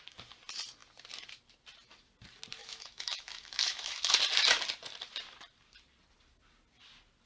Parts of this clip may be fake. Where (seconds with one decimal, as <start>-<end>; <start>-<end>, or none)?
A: 2.6-4.1